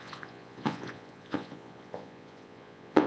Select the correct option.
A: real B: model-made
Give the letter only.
B